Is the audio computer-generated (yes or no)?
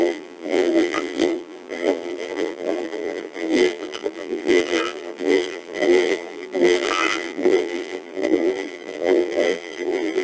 yes